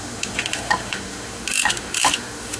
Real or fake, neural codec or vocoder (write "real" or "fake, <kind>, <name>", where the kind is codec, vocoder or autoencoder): fake, autoencoder, DAC-VAE